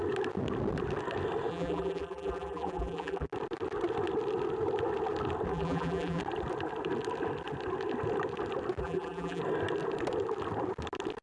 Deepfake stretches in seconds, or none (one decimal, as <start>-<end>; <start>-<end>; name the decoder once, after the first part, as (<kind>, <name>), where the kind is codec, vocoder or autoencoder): 1.5-3.3 (vocoder, BigVGAN v2); 5.5-6.2; 8.8-9.4